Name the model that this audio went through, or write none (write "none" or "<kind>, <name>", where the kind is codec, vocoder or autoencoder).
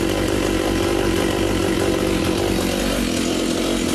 none